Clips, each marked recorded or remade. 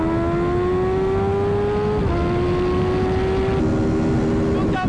recorded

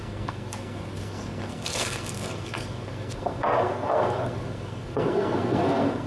remade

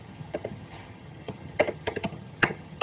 remade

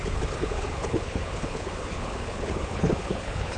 remade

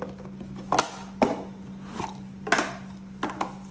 recorded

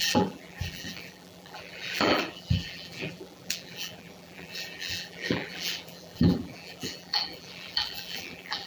remade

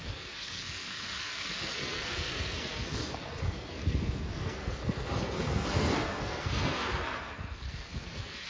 remade